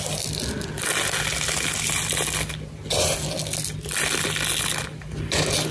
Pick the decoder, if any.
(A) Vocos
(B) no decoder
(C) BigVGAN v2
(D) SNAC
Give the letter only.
B